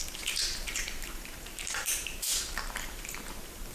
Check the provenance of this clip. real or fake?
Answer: fake